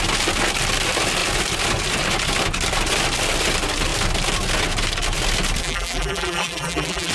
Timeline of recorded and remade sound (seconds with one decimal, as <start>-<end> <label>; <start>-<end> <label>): 0.0-5.6 recorded; 5.6-7.1 remade